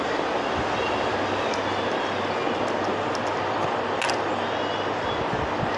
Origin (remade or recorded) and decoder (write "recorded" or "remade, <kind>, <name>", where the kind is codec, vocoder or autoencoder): recorded